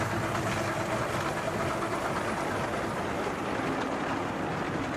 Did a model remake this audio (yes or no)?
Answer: no